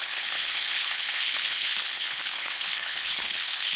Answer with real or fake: fake